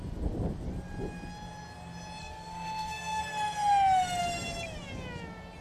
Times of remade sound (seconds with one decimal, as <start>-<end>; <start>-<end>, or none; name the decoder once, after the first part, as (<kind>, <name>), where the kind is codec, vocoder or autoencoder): 2.2-3.2 (codec, SNAC)